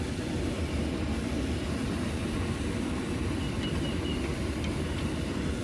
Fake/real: fake